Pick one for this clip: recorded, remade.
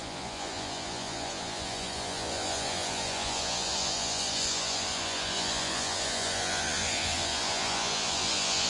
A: remade